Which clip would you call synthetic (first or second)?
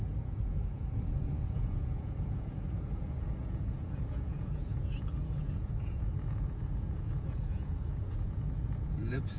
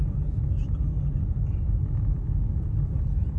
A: first